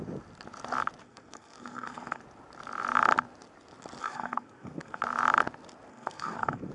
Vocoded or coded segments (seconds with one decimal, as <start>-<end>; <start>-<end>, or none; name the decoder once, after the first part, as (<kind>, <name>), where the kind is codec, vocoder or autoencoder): 1.0-2.2 (codec, SNAC); 4.0-5.0; 5.9-6.7